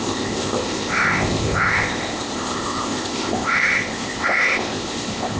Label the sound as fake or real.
fake